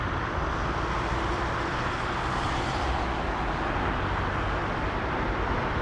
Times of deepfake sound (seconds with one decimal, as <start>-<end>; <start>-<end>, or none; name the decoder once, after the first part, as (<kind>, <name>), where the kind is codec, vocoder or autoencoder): none